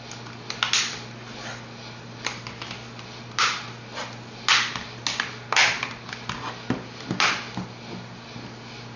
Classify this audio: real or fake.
real